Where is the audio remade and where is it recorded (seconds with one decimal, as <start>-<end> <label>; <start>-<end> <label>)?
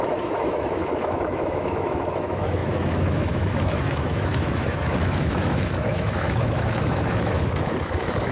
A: 0.0-8.3 remade